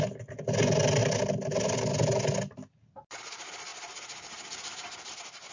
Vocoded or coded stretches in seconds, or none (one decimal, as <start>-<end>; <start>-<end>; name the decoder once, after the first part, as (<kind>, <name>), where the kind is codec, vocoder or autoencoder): none